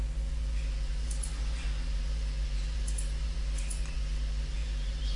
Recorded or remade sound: remade